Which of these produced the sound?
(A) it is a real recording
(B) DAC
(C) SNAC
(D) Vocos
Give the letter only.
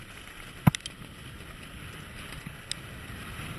A